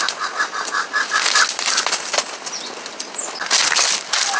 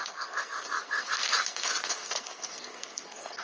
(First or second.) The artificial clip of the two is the second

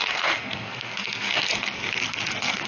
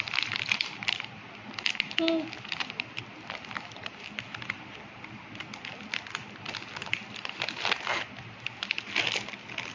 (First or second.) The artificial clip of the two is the first